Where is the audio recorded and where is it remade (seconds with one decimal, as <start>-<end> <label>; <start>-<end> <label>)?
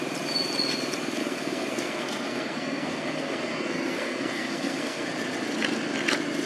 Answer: 0.0-1.2 recorded; 1.2-5.1 remade; 5.1-6.5 recorded